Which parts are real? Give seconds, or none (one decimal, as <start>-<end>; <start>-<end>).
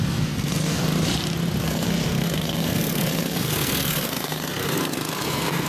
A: 0.9-1.6